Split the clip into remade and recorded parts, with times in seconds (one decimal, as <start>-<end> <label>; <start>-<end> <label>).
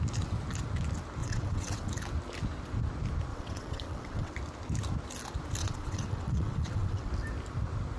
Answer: 0.0-1.2 recorded; 1.2-1.9 remade; 1.9-3.3 recorded; 3.3-4.3 remade; 4.3-5.6 recorded; 5.6-7.1 remade; 7.1-8.0 recorded